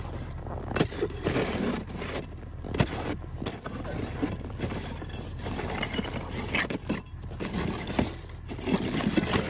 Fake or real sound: real